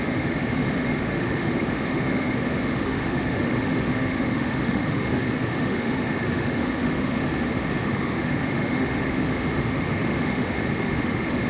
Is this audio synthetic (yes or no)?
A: yes